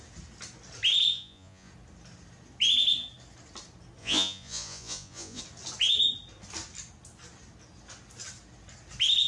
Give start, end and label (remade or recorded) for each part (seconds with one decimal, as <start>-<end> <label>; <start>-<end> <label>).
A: 0.0-1.1 recorded; 1.1-1.7 remade; 1.7-4.0 recorded; 4.0-5.4 remade; 5.4-9.3 recorded